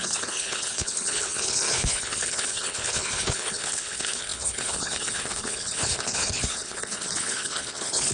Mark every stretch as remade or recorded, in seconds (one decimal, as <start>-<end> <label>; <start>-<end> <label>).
0.0-8.1 remade